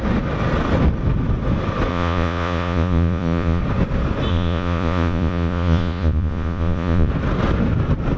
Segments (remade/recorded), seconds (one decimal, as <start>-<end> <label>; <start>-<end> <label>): 0.0-1.9 recorded; 1.9-3.6 remade; 3.6-4.3 recorded; 4.3-7.1 remade; 7.1-8.2 recorded